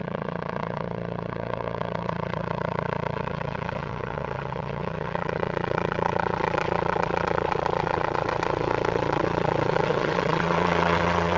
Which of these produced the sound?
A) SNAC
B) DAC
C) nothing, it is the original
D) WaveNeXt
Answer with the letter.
D